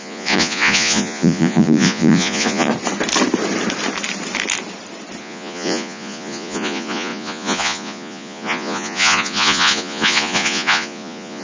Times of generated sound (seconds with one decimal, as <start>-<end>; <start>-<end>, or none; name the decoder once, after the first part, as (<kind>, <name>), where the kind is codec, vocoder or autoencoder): 0.0-2.7 (vocoder, Vocos); 5.2-11.4